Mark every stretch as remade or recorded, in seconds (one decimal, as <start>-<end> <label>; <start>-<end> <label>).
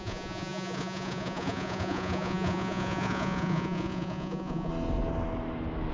0.0-4.7 remade; 4.7-5.9 recorded